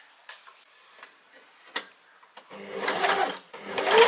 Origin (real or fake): real